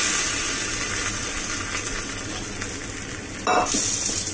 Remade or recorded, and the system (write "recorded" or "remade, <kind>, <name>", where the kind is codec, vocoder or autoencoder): recorded